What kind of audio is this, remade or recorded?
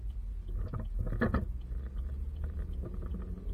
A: recorded